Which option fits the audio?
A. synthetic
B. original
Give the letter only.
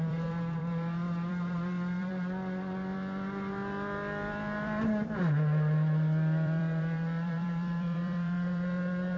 A